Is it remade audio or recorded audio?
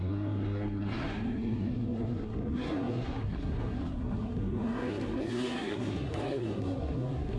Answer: remade